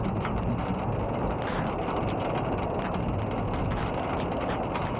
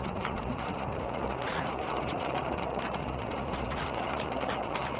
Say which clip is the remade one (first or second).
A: second